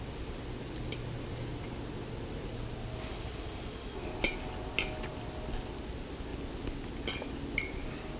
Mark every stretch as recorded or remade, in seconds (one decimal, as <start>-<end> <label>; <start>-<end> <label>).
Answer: 0.0-8.2 recorded